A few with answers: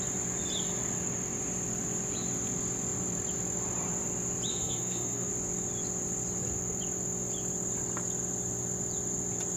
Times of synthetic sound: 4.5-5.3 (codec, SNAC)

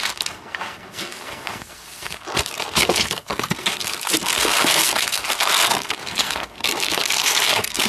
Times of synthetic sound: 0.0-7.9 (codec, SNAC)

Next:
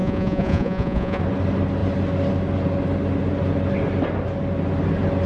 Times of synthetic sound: 0.0-1.2 (vocoder, Vocos)